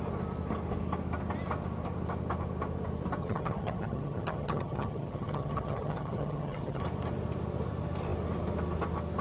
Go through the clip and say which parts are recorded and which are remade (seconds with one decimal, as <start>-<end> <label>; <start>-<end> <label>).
0.0-3.2 recorded; 3.2-6.8 remade; 6.8-9.2 recorded